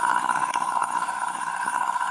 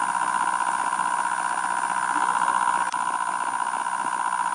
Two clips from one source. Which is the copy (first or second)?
first